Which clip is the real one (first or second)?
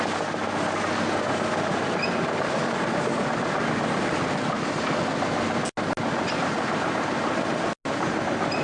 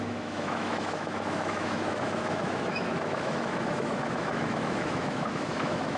first